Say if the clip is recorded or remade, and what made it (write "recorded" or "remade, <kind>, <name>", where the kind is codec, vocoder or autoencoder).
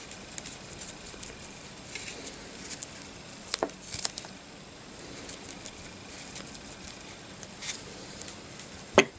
recorded